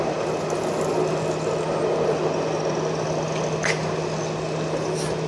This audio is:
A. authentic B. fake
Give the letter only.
A